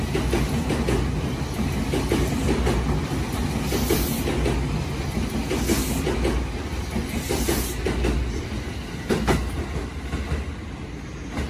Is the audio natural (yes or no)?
yes